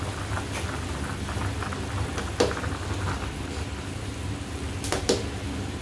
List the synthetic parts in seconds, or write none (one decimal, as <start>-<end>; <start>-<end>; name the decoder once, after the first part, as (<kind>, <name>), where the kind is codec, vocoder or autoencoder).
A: none